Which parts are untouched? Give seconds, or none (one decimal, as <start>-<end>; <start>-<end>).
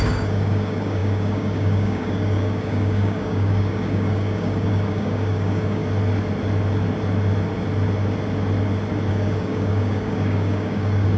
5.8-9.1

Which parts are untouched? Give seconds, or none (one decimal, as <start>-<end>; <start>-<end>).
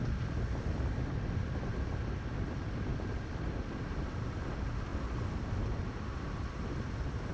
0.0-7.3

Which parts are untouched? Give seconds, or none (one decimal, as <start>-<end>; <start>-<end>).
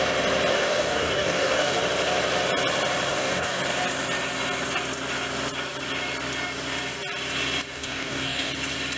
0.0-0.5; 1.8-3.1; 3.6-7.7; 8.5-9.0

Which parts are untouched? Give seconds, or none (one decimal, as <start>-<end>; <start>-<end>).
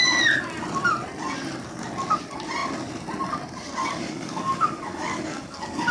0.0-3.8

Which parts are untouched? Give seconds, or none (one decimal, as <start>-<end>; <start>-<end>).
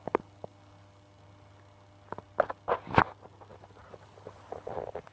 0.0-5.1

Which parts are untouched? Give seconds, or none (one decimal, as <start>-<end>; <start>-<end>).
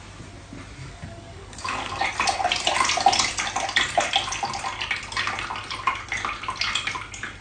0.0-0.8; 2.0-7.4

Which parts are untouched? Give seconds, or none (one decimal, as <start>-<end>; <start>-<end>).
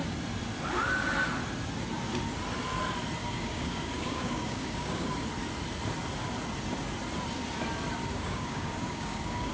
0.0-3.2; 5.1-8.1